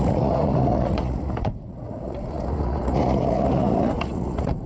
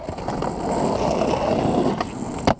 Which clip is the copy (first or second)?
first